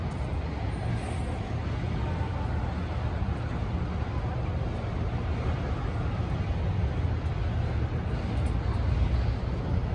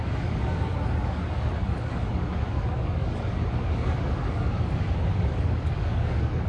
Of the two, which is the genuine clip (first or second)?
first